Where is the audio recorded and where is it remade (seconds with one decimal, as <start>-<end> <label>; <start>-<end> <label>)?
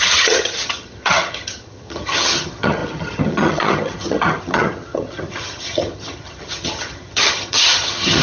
0.0-8.2 remade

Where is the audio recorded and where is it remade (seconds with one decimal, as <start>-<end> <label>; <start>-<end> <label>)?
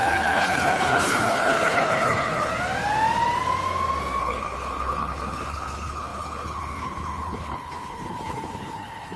0.0-2.5 remade; 2.5-4.2 recorded; 4.2-9.2 remade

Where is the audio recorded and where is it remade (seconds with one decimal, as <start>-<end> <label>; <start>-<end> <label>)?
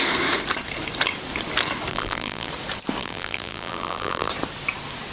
0.0-1.9 recorded; 1.9-2.5 remade; 2.5-3.0 recorded; 3.0-4.3 remade; 4.3-5.1 recorded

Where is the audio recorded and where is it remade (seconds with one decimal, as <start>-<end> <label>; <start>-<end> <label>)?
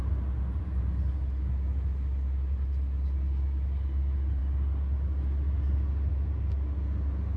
0.0-7.4 recorded